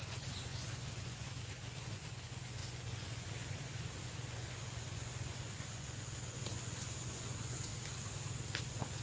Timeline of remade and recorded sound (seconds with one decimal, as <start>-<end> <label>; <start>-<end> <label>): 0.0-7.7 remade; 7.7-8.6 recorded; 8.6-9.0 remade